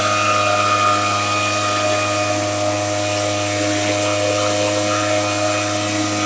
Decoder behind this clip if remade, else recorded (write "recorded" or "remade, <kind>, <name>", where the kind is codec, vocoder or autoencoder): recorded